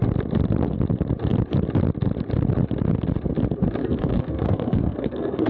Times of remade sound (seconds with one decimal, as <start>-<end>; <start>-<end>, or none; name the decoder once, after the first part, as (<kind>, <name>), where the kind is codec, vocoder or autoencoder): 3.8-5.5 (codec, SNAC)